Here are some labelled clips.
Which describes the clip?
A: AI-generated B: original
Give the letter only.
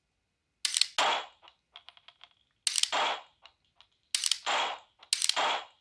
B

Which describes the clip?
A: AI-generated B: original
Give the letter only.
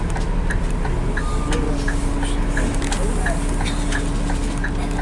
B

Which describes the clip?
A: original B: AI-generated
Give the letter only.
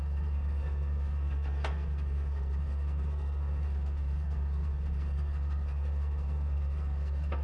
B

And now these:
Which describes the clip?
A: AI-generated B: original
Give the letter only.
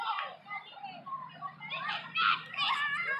B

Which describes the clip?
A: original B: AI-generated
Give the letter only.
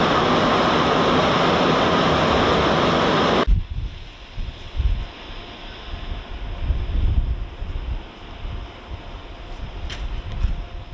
A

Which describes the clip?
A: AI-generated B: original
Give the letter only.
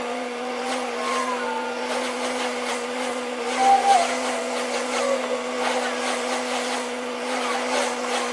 B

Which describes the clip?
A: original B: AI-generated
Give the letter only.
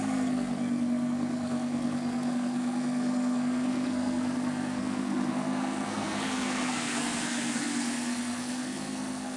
B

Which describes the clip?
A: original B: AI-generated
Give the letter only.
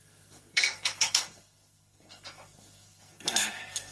B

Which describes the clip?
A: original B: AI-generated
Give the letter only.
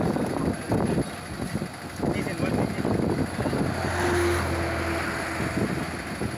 A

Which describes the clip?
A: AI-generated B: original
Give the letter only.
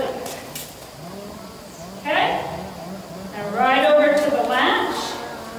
B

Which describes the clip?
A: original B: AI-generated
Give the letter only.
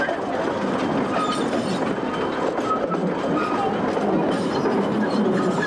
A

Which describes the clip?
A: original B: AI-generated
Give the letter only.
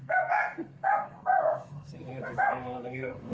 B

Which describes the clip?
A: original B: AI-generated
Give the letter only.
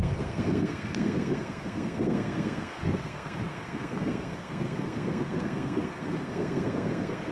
B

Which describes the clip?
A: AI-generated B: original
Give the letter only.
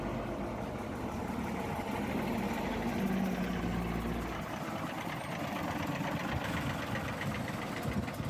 B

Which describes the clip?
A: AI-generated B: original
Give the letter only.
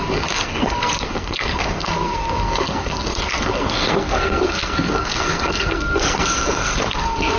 A